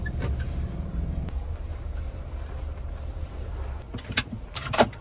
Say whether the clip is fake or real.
fake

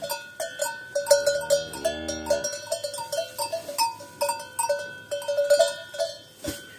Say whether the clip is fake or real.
real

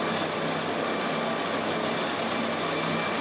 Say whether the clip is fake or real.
real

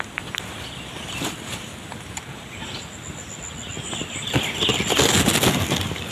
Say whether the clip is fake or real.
real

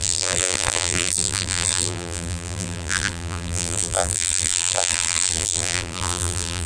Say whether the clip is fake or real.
fake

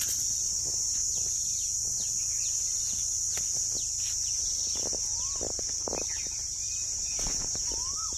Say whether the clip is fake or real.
real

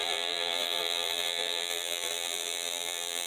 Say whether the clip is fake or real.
fake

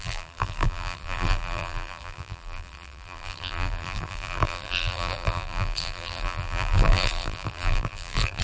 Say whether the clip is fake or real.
fake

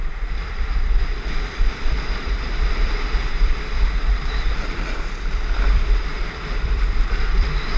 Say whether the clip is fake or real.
fake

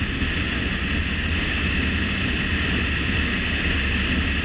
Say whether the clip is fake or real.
real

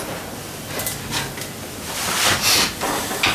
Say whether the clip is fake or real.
real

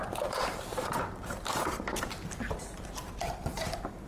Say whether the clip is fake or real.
fake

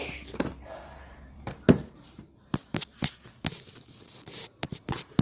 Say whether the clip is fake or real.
fake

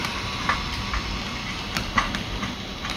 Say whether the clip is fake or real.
fake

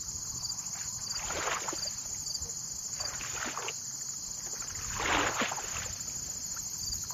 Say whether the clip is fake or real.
real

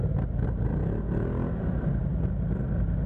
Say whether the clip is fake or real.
real